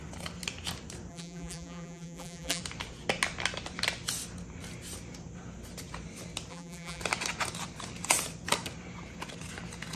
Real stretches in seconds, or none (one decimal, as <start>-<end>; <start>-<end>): 0.0-1.1; 2.6-6.5; 7.0-10.0